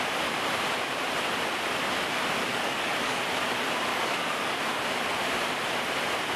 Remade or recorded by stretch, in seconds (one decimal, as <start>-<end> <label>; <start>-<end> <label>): 0.0-2.5 recorded; 2.5-3.2 remade; 3.2-3.9 recorded; 3.9-4.6 remade; 4.6-6.4 recorded